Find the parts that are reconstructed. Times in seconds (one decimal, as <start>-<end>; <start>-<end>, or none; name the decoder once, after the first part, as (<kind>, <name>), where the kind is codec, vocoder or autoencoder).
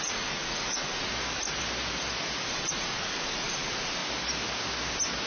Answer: 0.0-1.1 (vocoder, Vocos); 2.5-4.0